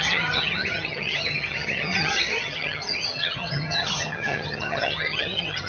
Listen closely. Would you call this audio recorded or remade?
remade